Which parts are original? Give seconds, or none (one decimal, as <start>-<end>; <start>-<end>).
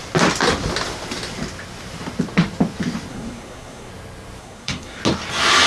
0.0-3.1; 3.9-4.4; 5.0-5.7